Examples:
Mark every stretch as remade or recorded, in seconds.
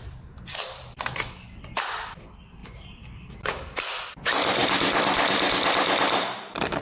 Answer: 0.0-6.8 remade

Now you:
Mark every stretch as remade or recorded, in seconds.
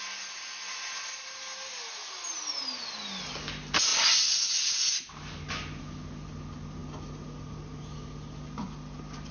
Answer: 0.0-9.3 recorded